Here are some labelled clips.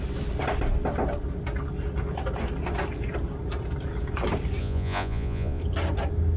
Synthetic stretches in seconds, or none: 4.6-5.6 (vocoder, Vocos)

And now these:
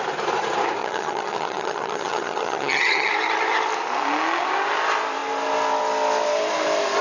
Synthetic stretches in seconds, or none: 0.8-3.1 (vocoder, HiFi-GAN)

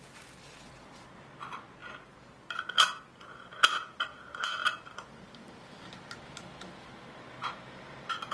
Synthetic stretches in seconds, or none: none

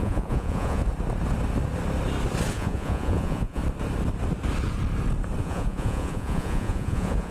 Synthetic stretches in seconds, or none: 0.0-0.8 (vocoder, Vocos); 2.5-3.6; 5.4-7.3